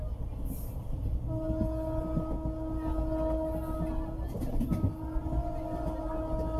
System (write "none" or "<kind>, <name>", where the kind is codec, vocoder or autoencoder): none